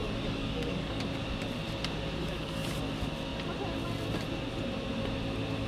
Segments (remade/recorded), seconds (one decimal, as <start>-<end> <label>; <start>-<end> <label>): 0.0-1.0 remade; 1.0-2.2 recorded; 2.2-2.8 remade; 2.8-5.7 recorded